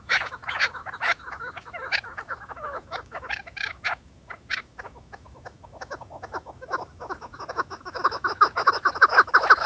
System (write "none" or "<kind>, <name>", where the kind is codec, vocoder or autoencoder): autoencoder, DAC-VAE